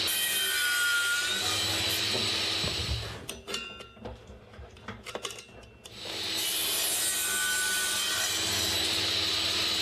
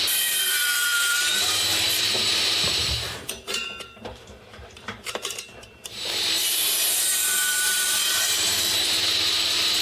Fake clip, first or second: second